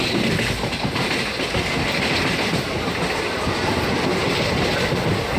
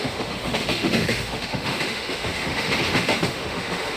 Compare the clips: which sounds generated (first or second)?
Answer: second